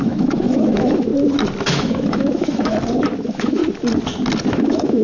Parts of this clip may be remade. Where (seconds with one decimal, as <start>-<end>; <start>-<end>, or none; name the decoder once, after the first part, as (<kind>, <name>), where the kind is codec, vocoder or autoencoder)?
0.0-1.1 (autoencoder, DAC-VAE); 1.7-2.7; 3.2-3.6; 4.5-5.0